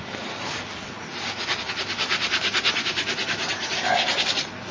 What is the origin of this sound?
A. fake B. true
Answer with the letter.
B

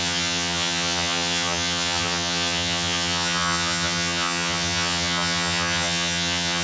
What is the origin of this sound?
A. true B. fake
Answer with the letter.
B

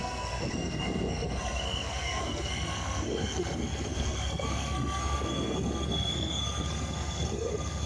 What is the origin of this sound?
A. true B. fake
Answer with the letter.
B